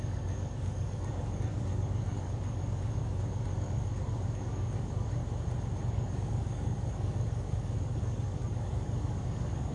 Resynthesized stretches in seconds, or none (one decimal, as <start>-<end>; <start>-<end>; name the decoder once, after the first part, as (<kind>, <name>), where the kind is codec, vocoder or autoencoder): 0.0-5.2 (codec, DAC); 5.9-9.7